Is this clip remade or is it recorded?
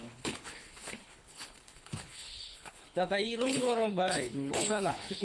remade